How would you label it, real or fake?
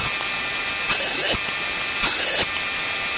real